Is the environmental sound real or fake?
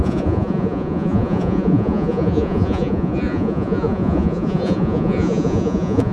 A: fake